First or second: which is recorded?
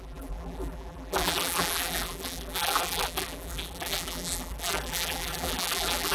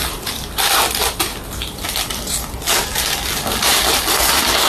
second